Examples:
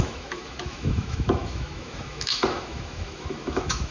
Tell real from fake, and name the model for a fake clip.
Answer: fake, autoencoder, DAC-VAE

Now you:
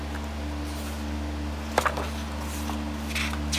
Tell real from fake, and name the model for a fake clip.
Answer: real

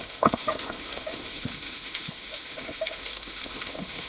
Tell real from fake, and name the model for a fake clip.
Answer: fake, autoencoder, DAC-VAE